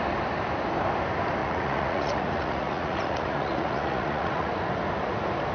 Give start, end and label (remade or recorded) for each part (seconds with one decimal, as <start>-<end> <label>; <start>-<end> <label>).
0.0-1.4 recorded; 1.4-4.5 remade; 4.5-5.5 recorded